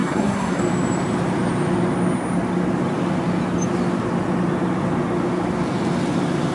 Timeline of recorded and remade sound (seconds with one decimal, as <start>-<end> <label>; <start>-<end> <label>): 0.0-0.6 remade; 0.6-6.5 recorded